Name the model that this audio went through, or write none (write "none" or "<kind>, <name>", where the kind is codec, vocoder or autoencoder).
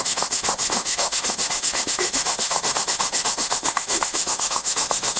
autoencoder, DAC-VAE